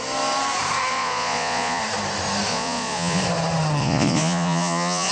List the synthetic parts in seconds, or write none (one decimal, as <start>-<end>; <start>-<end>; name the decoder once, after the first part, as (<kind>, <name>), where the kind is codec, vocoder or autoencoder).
0.9-1.8 (vocoder, Vocos); 2.5-3.2; 3.8-5.1

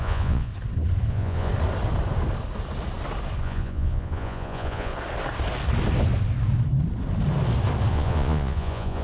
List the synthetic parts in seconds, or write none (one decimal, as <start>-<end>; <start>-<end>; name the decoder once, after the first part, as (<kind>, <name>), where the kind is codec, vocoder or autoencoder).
0.0-0.5 (vocoder, Vocos); 1.1-1.5; 3.4-4.9; 7.9-9.0

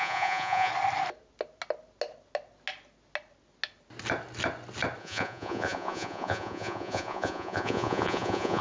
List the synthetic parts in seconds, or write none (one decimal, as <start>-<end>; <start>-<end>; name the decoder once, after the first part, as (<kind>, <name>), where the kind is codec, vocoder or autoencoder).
0.0-0.7 (vocoder, Vocos); 5.0-8.6

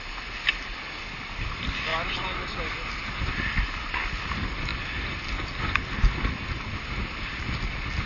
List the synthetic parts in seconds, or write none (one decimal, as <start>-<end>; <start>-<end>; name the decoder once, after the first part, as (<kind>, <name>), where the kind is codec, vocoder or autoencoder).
none

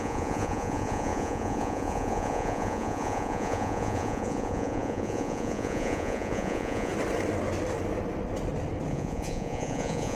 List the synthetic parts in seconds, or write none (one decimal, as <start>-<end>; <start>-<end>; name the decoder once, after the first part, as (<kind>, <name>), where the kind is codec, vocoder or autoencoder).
0.0-6.9 (vocoder, Vocos); 8.9-10.1

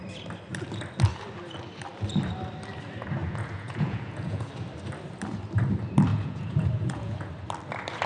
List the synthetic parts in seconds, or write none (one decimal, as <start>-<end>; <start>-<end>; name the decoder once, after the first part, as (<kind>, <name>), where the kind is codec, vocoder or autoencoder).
3.2-4.5 (vocoder, Vocos); 6.1-7.3